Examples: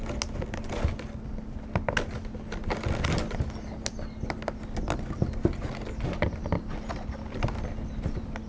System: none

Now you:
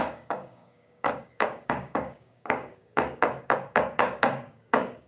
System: codec, DAC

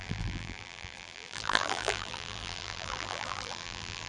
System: vocoder, BigVGAN v2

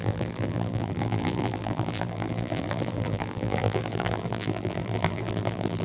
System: vocoder, BigVGAN v2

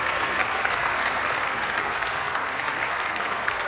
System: codec, SNAC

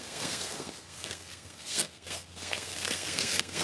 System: codec, SNAC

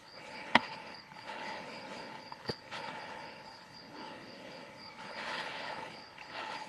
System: codec, HILCodec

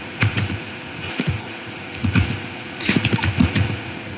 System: vocoder, Vocos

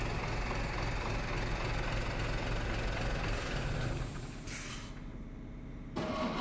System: none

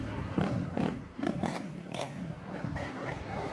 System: codec, SNAC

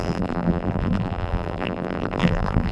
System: vocoder, BigVGAN v2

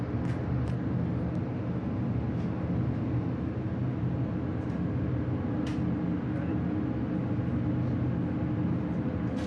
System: none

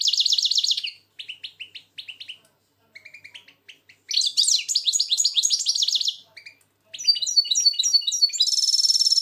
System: none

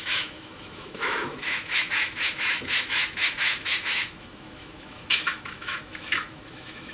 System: autoencoder, DAC-VAE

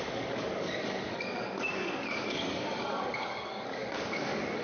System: codec, DAC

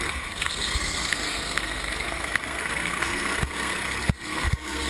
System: codec, SNAC